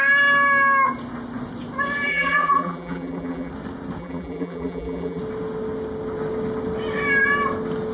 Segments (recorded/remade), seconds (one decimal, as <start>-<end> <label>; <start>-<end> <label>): 0.0-2.1 recorded; 2.1-3.5 remade; 3.5-4.0 recorded; 4.0-5.2 remade; 5.2-7.9 recorded